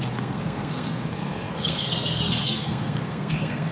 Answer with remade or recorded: remade